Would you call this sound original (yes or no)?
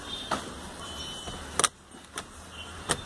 no